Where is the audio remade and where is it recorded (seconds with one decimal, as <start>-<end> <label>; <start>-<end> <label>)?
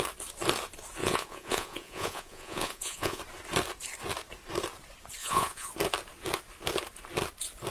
0.0-1.0 recorded; 1.0-3.2 remade; 3.2-5.2 recorded; 5.2-5.7 remade; 5.7-7.7 recorded